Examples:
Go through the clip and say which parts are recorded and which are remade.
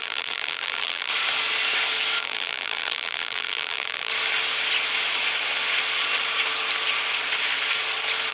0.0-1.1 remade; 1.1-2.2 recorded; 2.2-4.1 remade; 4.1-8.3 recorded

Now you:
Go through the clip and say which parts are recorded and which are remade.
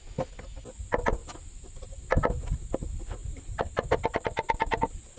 0.0-1.2 recorded; 1.2-2.6 remade; 2.6-3.2 recorded; 3.2-4.5 remade; 4.5-5.2 recorded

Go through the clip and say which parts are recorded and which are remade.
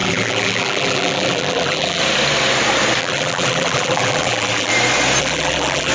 0.0-2.0 remade; 2.0-3.0 recorded; 3.0-4.7 remade; 4.7-5.2 recorded; 5.2-5.9 remade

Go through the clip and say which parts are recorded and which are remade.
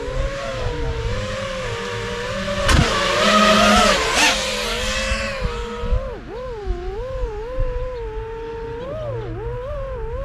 0.0-10.2 recorded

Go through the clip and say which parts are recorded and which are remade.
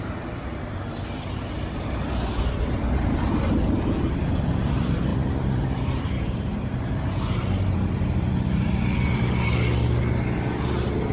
0.0-5.1 recorded; 5.1-6.9 remade; 6.9-11.1 recorded